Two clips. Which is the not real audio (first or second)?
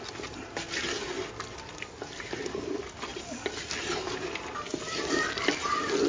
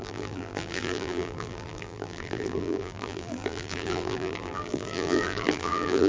second